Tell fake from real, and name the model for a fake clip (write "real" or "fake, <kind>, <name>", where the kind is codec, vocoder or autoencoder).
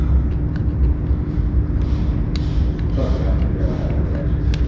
real